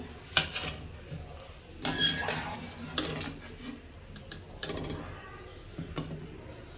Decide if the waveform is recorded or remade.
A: recorded